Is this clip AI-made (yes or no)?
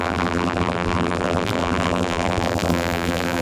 yes